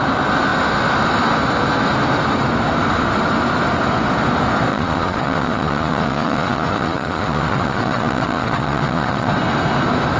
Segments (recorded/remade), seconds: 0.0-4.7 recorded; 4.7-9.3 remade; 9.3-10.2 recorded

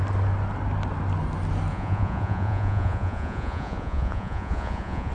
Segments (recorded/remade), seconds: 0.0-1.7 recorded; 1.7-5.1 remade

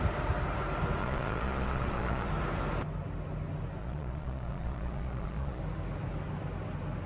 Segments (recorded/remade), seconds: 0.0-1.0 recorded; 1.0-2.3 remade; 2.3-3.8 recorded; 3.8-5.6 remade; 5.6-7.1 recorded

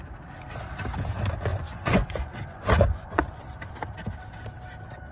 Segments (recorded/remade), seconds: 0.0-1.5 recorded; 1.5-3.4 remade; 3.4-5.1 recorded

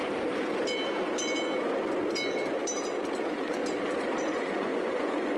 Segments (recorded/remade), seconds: 0.0-3.2 recorded; 3.2-3.6 remade; 3.6-4.3 recorded; 4.3-5.4 remade